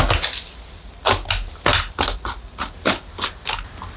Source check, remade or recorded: recorded